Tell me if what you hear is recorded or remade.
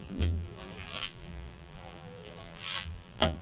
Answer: remade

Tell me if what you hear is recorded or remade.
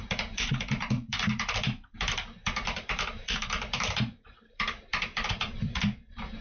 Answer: remade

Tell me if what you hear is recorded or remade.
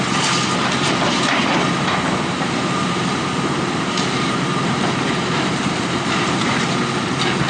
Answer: remade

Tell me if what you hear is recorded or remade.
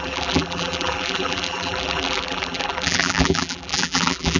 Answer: remade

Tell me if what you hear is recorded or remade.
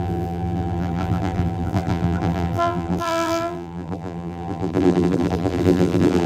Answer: remade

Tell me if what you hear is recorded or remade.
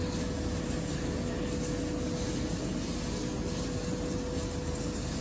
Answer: recorded